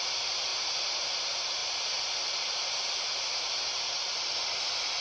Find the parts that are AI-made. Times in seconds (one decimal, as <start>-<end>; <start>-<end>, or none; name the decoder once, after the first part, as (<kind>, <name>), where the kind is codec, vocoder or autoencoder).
none